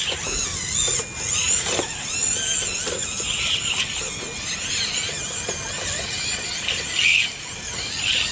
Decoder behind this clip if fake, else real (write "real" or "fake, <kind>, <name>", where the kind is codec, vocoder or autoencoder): real